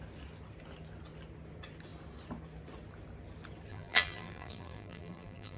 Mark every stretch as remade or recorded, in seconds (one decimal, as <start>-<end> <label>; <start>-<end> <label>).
0.0-3.7 recorded; 3.7-5.6 remade